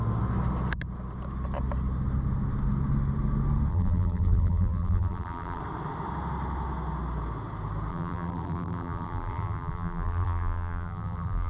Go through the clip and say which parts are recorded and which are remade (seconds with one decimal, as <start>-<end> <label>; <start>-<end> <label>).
0.0-3.7 recorded; 3.7-5.6 remade; 5.6-7.9 recorded; 7.9-11.5 remade

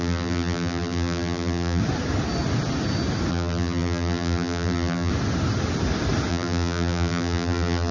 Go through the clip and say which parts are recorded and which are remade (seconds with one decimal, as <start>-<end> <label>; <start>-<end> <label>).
0.0-1.8 remade; 1.8-3.3 recorded; 3.3-5.1 remade; 5.1-6.3 recorded; 6.3-7.9 remade

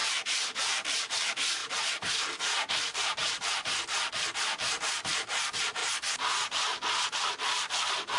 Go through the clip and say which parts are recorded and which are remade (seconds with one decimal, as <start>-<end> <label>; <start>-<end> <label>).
0.0-1.6 remade; 1.6-2.4 recorded; 2.4-3.2 remade; 3.2-4.3 recorded; 4.3-5.8 remade; 5.8-7.3 recorded; 7.3-8.2 remade

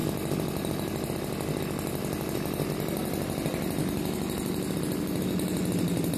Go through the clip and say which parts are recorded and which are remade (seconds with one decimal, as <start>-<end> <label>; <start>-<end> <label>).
0.0-2.0 recorded; 2.0-5.0 remade; 5.0-6.2 recorded

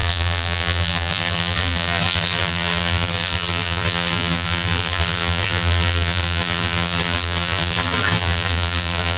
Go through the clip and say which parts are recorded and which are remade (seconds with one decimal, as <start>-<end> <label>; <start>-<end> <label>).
0.0-9.2 remade